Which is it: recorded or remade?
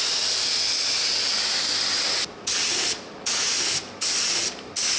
recorded